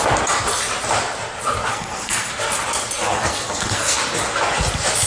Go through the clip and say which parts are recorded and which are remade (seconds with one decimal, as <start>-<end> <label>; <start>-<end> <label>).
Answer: 0.0-1.7 recorded; 1.7-2.3 remade; 2.3-3.0 recorded; 3.0-4.0 remade; 4.0-5.1 recorded